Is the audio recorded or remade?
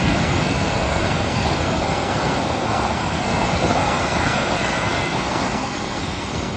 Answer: remade